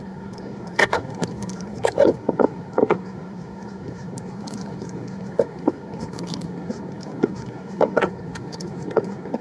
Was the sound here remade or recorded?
remade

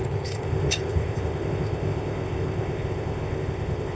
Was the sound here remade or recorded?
remade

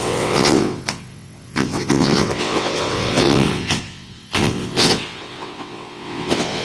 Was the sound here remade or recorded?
remade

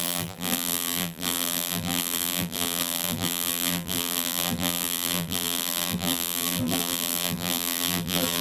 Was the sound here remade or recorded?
remade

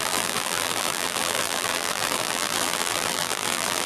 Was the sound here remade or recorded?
remade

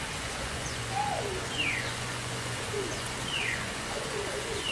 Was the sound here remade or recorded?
remade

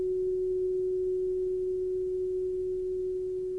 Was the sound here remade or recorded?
recorded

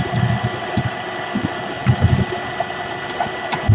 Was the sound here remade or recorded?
recorded